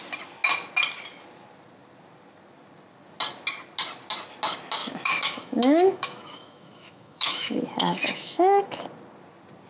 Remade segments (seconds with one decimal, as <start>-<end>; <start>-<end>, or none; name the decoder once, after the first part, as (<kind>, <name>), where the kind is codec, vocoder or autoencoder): 4.8-8.8 (autoencoder, DAC-VAE)